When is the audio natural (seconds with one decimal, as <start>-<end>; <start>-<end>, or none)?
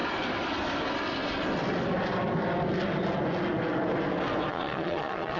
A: 0.0-4.5